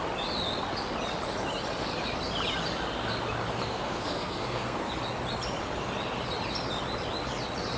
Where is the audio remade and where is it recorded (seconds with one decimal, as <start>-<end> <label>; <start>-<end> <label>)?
0.0-3.6 recorded; 3.6-4.9 remade; 4.9-7.8 recorded